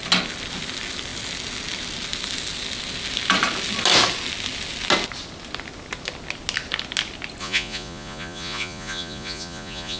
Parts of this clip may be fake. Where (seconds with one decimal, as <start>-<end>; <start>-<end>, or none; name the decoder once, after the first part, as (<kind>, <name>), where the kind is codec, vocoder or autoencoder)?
7.4-10.0 (vocoder, Vocos)